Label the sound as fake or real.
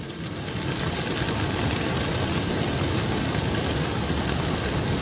real